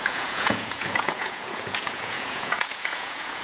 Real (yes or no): no